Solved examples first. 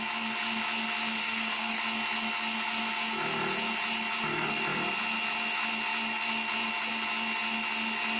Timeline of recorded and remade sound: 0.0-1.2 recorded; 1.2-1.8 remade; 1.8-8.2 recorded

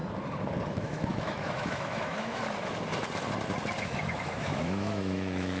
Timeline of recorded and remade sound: 0.0-0.7 recorded; 0.7-2.4 remade; 2.4-3.8 recorded; 3.8-5.6 remade

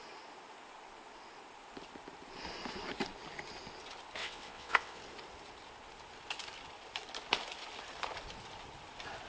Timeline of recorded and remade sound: 0.0-4.2 recorded; 4.2-5.0 remade; 5.0-9.3 recorded

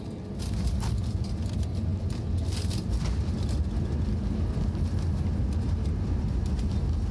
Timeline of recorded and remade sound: 0.0-7.1 recorded

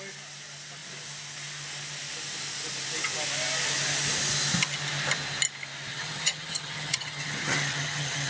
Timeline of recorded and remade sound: 0.0-5.9 recorded; 5.9-8.3 remade

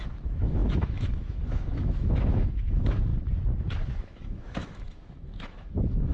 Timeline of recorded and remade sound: 0.0-3.1 remade; 3.1-4.0 recorded; 4.0-6.1 remade

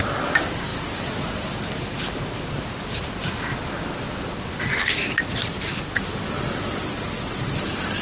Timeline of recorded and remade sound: 0.0-8.0 recorded

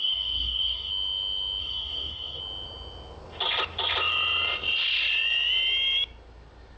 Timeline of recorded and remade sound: 0.0-0.9 remade; 0.9-1.6 recorded; 1.6-2.4 remade; 2.4-6.8 recorded